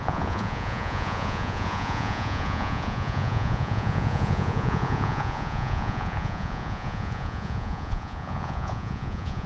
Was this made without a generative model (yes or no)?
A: no